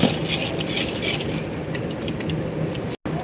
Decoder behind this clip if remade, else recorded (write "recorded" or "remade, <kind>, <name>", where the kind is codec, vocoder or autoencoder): recorded